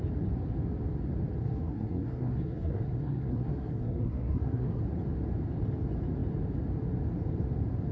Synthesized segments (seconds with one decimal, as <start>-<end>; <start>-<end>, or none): 1.4-4.8